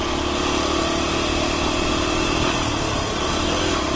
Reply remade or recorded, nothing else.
recorded